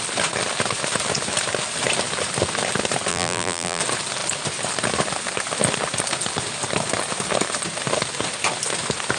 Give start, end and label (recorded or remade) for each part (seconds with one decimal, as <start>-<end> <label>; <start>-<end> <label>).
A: 0.0-3.1 recorded; 3.1-3.8 remade; 3.8-9.2 recorded